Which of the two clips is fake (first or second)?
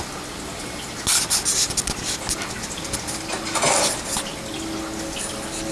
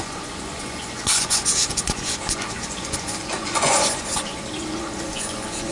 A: second